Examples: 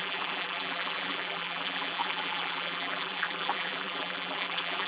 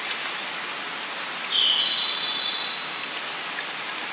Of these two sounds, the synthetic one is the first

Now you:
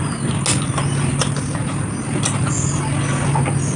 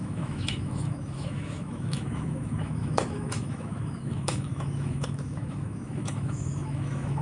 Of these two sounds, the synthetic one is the second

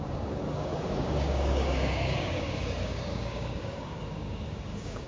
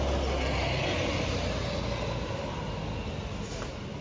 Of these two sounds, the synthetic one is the first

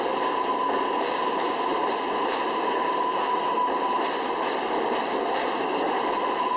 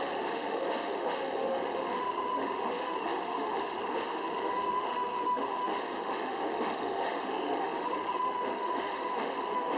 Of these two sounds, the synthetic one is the second